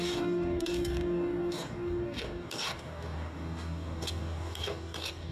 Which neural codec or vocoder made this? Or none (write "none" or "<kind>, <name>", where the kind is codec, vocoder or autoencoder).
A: codec, DAC